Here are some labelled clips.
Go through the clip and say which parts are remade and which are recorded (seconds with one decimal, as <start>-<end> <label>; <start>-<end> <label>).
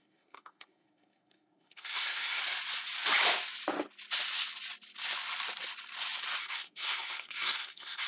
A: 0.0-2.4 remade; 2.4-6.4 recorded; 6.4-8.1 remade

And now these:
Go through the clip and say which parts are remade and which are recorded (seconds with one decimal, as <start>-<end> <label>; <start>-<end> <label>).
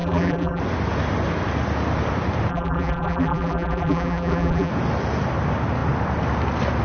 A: 0.0-0.6 remade; 0.6-2.5 recorded; 2.5-4.7 remade; 4.7-6.8 recorded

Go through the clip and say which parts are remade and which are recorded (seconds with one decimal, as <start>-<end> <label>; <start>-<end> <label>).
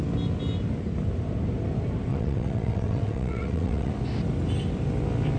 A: 0.0-2.1 recorded; 2.1-3.9 remade; 3.9-5.4 recorded